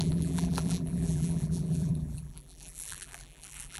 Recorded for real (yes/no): no